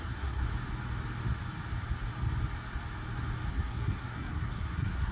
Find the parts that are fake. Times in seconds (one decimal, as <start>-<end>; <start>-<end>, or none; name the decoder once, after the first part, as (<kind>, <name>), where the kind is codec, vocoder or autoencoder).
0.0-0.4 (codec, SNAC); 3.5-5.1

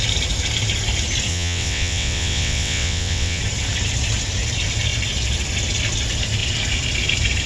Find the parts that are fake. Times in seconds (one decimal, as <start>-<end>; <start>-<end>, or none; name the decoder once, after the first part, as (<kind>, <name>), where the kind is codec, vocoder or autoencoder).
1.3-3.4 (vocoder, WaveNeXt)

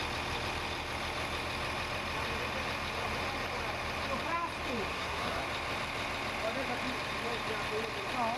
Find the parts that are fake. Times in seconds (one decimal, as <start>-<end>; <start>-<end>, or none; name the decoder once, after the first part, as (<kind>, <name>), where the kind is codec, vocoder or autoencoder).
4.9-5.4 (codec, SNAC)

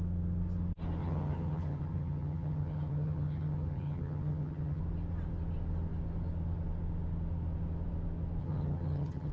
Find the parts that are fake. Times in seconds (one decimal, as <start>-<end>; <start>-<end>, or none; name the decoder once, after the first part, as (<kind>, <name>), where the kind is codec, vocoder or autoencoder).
1.0-4.8 (vocoder, HiFi-GAN); 8.4-9.3

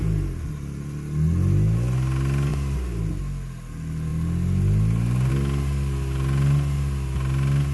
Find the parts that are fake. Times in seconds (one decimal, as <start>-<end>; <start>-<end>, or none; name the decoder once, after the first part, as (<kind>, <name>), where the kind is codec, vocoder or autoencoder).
none

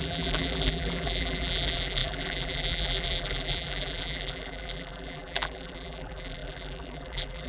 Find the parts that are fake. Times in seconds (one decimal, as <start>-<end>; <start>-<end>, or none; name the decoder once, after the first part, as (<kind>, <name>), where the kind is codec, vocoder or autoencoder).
0.0-7.5 (vocoder, BigVGAN v2)

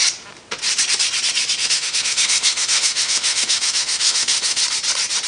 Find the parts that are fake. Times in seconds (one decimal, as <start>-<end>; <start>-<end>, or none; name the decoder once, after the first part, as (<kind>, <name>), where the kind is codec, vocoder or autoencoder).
1.6-4.6 (autoencoder, DAC-VAE)

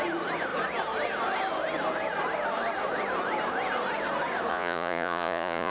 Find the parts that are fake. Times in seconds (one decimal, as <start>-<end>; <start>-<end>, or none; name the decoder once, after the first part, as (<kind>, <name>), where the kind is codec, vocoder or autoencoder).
4.5-5.7 (vocoder, Vocos)